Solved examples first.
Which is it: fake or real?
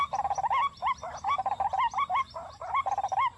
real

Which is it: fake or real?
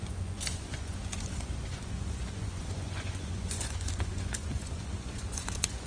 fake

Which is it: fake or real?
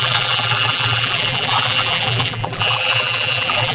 fake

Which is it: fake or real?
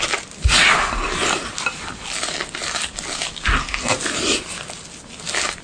real